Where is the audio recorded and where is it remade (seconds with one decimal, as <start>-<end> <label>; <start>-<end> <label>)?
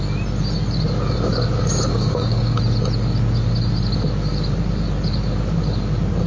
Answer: 0.0-1.9 recorded; 1.9-2.6 remade; 2.6-6.3 recorded